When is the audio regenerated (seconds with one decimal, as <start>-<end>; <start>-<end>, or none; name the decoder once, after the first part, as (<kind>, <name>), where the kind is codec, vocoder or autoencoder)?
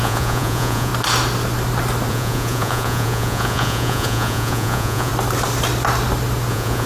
0.0-0.9 (vocoder, Vocos); 2.1-5.1; 6.5-6.9